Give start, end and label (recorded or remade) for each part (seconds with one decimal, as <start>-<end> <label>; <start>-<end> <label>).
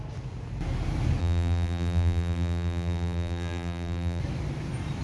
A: 0.0-1.2 recorded; 1.2-4.2 remade; 4.2-5.0 recorded